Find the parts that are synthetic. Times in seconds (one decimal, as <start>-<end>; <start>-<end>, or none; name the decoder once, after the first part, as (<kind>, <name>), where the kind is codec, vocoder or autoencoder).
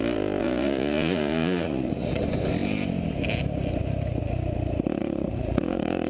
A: 0.4-2.2 (vocoder, Vocos); 5.0-6.1